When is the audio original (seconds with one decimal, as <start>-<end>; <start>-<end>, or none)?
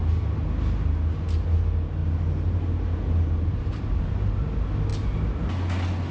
0.0-6.1